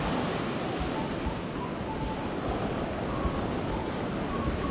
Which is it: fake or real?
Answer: real